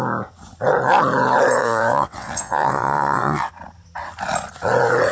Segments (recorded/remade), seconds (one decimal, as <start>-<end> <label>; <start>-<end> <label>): 0.0-1.6 recorded; 1.6-3.5 remade; 3.5-5.1 recorded